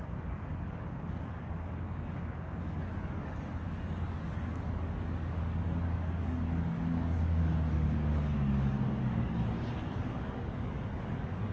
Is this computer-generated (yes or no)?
yes